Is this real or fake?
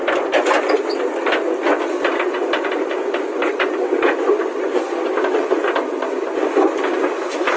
real